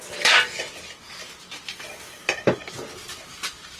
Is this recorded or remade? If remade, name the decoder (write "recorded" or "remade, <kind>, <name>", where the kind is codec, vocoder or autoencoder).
recorded